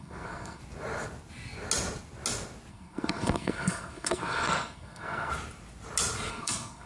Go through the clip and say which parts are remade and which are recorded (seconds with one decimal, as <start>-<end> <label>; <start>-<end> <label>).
0.0-0.6 remade; 0.6-2.7 recorded; 2.7-5.3 remade; 5.3-6.3 recorded; 6.3-6.9 remade